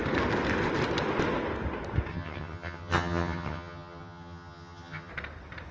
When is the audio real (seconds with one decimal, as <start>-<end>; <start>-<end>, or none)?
0.0-2.1; 5.1-5.7